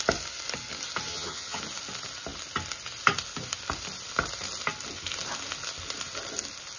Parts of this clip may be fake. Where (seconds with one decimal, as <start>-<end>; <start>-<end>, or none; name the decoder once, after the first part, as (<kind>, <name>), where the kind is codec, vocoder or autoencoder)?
1.1-1.6 (vocoder, HiFi-GAN)